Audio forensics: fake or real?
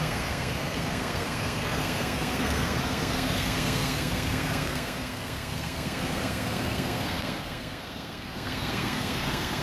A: fake